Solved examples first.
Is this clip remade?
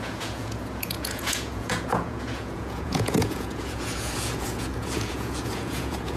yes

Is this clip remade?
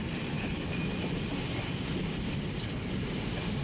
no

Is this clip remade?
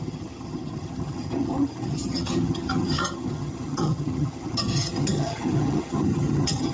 yes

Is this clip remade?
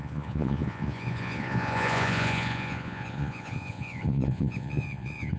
yes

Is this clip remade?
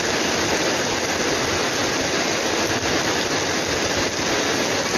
no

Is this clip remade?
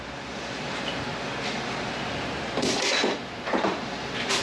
yes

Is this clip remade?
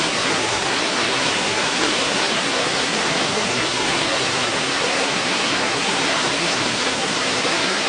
yes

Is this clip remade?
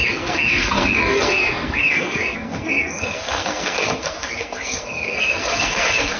yes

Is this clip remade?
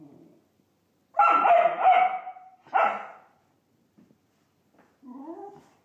no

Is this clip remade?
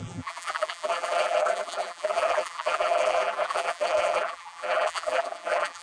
yes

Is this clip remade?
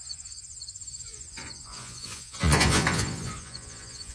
yes